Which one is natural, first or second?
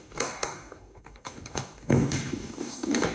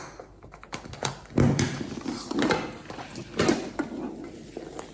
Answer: second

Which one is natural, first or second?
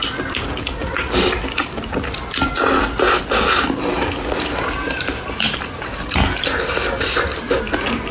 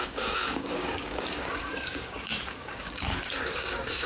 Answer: first